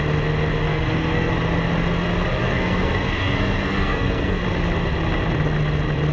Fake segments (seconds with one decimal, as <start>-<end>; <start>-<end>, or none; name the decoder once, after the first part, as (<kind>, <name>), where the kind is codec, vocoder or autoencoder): 0.7-1.3 (codec, SNAC); 2.4-4.4